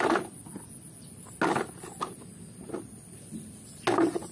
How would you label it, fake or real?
real